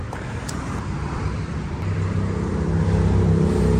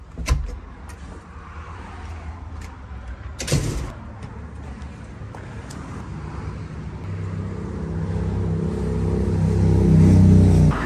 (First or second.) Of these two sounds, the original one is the second